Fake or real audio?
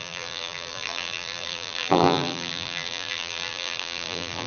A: fake